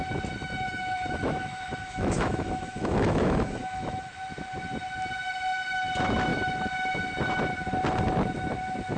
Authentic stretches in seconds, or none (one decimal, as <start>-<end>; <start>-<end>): 0.0-0.4; 4.1-9.0